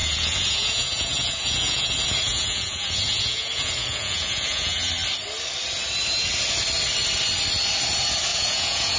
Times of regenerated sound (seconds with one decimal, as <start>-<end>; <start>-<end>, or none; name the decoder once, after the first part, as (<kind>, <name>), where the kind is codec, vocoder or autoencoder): 0.0-4.9 (vocoder, Vocos); 8.3-9.0